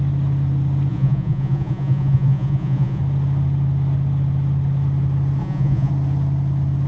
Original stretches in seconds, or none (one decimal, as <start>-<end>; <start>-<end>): 0.0-0.9; 3.0-5.4; 5.9-6.9